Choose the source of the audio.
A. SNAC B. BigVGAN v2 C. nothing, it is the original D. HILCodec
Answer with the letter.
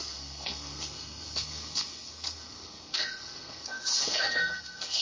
A